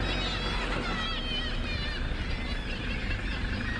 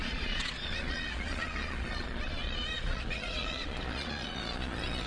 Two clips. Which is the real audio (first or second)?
first